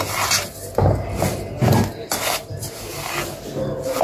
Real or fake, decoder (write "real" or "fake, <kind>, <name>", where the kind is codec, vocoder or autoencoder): real